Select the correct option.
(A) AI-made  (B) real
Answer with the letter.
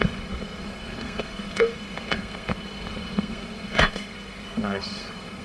A